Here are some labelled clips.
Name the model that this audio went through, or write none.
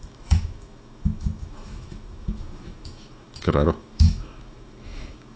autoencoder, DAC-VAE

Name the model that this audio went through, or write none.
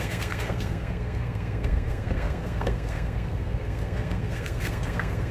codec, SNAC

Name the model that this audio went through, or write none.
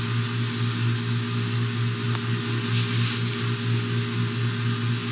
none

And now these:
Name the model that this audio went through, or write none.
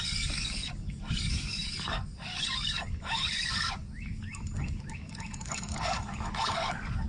codec, DAC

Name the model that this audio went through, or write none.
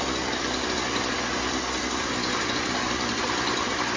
none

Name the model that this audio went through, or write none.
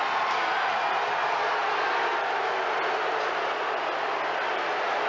none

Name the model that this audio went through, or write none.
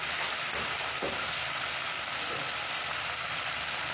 none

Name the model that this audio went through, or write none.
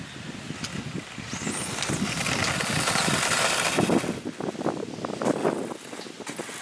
none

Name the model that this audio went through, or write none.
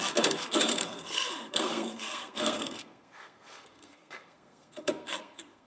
codec, SNAC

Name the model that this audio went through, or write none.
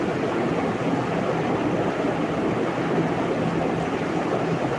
none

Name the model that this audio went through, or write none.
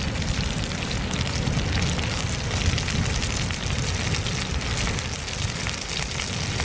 none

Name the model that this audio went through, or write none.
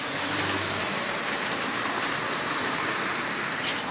vocoder, BigVGAN v2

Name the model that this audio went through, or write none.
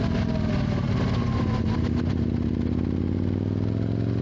none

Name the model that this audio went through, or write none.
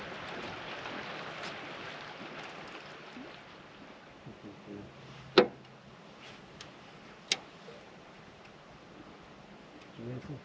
none